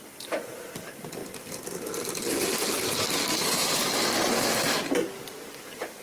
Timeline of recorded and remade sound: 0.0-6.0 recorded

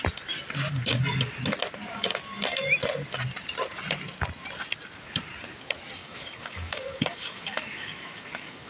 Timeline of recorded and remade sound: 0.0-6.0 recorded; 6.0-8.7 remade